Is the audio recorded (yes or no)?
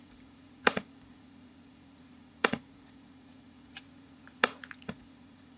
no